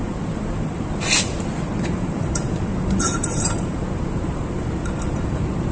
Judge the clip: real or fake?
fake